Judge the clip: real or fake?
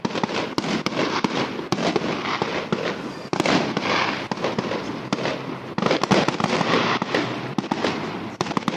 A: real